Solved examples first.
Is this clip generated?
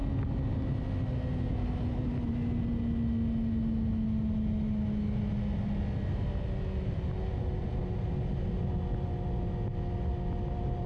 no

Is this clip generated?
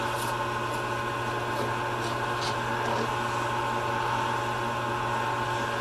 no